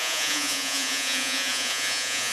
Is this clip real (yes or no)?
no